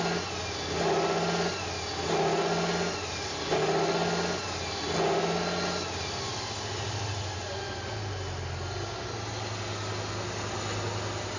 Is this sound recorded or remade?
recorded